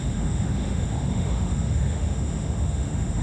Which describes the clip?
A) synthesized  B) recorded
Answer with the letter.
A